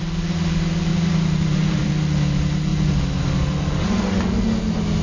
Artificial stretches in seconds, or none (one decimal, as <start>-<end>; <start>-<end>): 0.9-1.9